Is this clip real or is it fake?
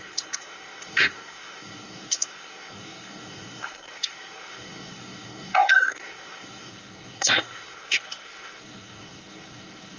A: fake